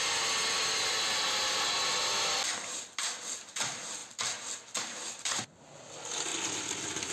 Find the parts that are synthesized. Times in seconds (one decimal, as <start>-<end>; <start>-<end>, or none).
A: none